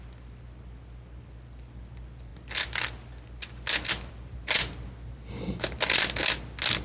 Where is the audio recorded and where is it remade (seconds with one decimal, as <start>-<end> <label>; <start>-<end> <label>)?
0.0-6.8 recorded